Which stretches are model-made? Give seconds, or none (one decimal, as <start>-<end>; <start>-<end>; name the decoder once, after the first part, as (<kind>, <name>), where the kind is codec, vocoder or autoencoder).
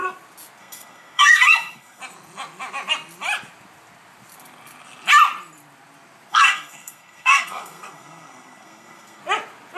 0.6-2.0 (codec, SNAC); 6.3-9.2